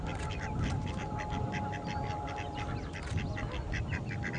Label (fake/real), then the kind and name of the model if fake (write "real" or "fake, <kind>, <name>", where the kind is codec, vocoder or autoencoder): real